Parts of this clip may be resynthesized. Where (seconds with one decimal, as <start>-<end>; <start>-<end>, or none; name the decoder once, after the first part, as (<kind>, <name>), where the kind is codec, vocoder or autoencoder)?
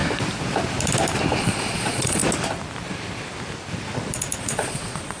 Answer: 1.4-2.2 (vocoder, Vocos); 4.4-5.2